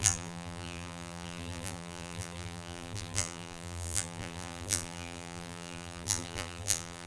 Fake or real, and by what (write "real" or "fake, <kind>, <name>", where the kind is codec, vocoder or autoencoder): fake, vocoder, BigVGAN v2